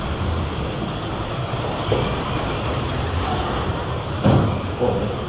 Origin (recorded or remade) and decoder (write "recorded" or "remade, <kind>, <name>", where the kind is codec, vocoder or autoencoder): recorded